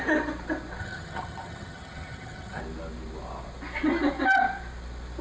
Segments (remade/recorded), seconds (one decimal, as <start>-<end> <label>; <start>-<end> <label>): 0.0-0.8 recorded; 0.8-2.6 remade; 2.6-5.2 recorded

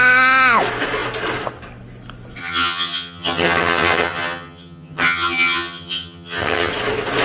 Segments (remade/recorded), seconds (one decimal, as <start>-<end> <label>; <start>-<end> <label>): 0.0-2.4 recorded; 2.4-6.7 remade; 6.7-7.2 recorded

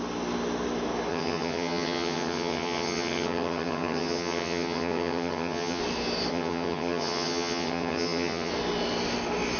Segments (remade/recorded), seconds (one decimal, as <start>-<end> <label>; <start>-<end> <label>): 0.0-1.1 recorded; 1.1-5.8 remade; 5.8-6.3 recorded; 6.3-8.5 remade; 8.5-9.6 recorded

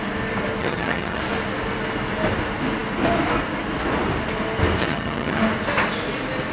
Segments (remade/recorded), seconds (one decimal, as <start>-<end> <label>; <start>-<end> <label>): 0.0-0.6 recorded; 0.6-1.2 remade; 1.2-4.8 recorded; 4.8-5.4 remade; 5.4-6.5 recorded

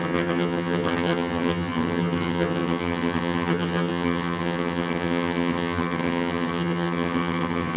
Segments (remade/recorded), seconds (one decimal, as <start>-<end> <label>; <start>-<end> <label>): 0.0-7.8 remade

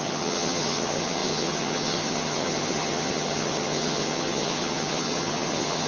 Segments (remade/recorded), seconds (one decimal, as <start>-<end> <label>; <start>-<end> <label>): 0.0-5.9 remade